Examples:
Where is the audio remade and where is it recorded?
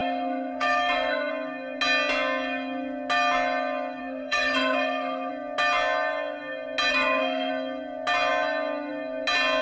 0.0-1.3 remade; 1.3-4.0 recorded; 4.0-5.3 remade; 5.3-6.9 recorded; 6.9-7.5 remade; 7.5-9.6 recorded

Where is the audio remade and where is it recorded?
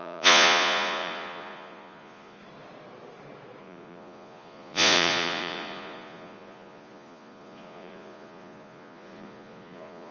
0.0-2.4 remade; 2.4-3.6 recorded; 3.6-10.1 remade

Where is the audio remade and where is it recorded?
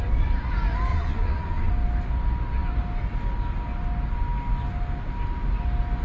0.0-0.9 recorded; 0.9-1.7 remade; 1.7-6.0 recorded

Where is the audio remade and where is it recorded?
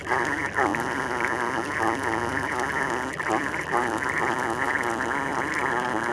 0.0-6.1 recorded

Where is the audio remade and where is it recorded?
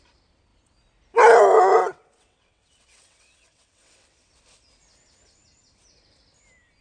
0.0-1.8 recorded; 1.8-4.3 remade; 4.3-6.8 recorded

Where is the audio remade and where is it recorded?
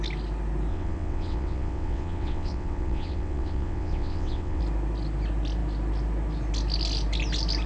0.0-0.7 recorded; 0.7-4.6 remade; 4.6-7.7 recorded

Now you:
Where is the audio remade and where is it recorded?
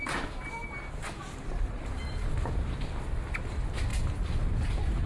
0.0-1.2 recorded; 1.2-2.5 remade; 2.5-5.1 recorded